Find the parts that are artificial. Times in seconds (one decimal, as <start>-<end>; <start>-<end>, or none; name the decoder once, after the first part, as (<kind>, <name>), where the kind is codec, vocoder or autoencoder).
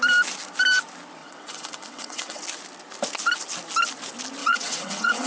1.2-2.4 (vocoder, WaveNeXt); 4.4-5.3